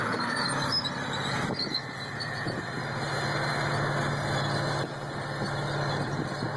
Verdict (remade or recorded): recorded